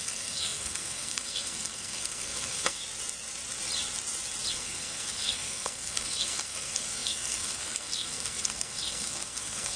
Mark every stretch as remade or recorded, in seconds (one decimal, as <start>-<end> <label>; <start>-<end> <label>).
0.0-2.8 remade; 2.8-4.5 recorded; 4.5-9.8 remade